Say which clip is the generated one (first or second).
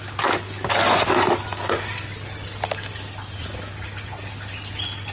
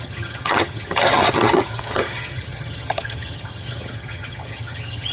second